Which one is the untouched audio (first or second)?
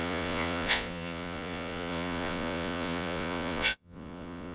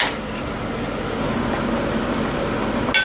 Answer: second